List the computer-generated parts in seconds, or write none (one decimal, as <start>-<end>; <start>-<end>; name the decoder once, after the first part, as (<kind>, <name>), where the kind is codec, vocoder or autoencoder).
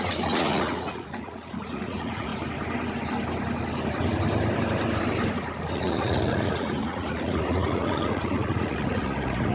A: 0.0-2.3 (vocoder, Vocos); 5.7-9.5